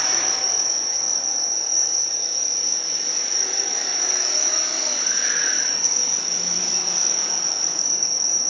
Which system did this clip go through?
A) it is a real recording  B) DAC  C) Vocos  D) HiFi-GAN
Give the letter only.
B